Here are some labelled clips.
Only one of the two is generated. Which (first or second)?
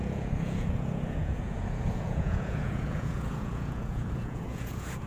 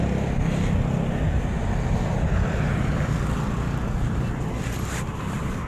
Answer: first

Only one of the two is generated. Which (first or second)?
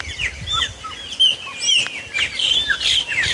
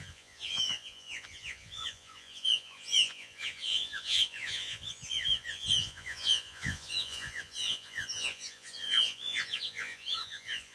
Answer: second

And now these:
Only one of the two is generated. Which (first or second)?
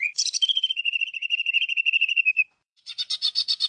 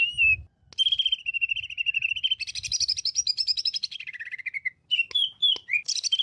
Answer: first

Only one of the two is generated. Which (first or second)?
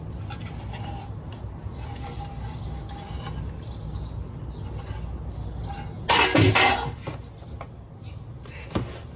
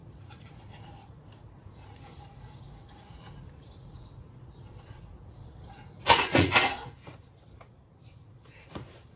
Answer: second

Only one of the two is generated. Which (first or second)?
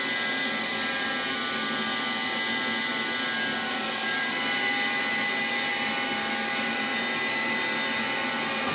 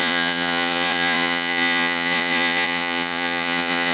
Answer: second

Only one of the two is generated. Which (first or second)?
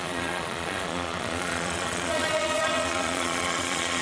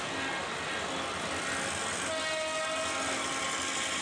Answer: first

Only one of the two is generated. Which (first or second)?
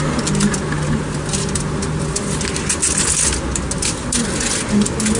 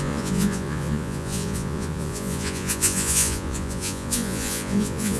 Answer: second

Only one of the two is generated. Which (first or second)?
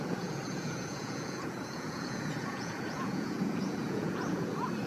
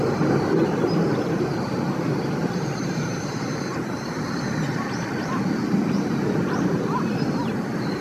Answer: first